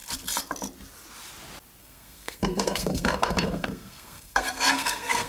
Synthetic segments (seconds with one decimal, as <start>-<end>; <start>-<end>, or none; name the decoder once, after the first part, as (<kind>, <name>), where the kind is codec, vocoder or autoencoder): 1.8-5.3 (codec, SNAC)